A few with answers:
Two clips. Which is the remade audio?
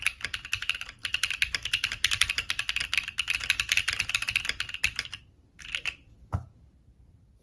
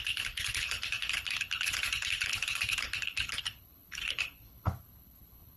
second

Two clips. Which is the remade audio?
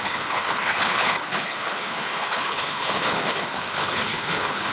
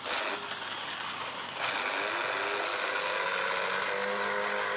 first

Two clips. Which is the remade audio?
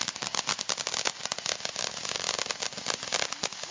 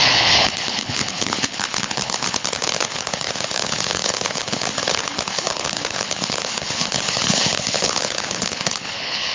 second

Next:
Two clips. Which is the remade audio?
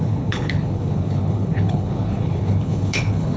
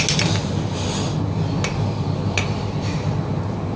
first